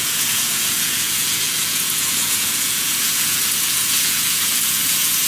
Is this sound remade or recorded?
remade